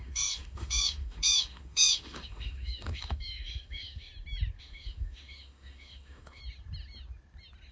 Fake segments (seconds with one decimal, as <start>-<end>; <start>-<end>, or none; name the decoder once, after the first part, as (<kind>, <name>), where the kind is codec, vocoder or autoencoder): 0.0-4.1 (autoencoder, DAC-VAE); 4.6-6.4